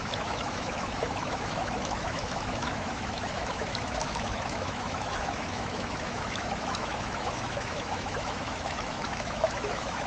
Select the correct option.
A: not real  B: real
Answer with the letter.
A